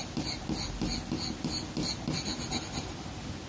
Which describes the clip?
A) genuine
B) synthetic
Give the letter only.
A